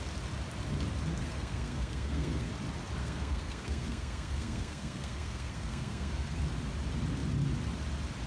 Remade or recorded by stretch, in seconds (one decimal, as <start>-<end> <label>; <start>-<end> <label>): 0.0-1.2 recorded; 1.2-2.5 remade; 2.5-3.0 recorded; 3.0-6.4 remade; 6.4-8.3 recorded

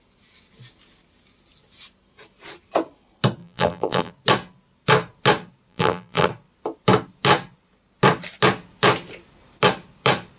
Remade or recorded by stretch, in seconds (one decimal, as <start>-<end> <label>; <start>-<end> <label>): 0.0-3.4 recorded; 3.4-4.1 remade; 4.1-5.7 recorded; 5.7-6.3 remade; 6.3-10.4 recorded